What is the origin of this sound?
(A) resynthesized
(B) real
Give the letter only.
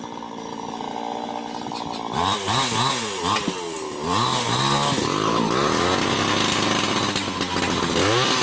B